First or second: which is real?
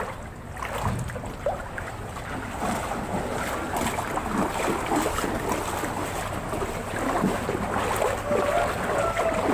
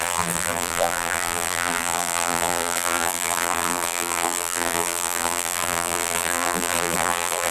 first